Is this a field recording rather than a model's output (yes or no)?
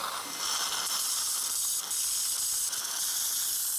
yes